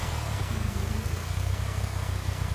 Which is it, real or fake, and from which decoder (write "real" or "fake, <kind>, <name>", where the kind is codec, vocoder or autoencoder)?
fake, codec, SNAC